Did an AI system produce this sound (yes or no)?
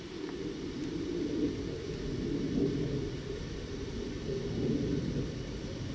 no